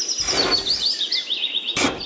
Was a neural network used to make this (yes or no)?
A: no